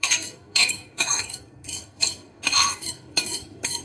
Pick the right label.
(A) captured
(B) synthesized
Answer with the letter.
B